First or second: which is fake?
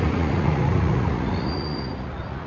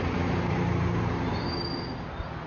first